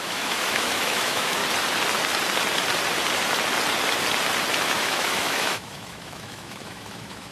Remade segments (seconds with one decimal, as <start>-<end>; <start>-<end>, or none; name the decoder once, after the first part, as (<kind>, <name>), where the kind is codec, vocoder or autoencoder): 0.0-1.4 (autoencoder, DAC-VAE); 4.6-7.3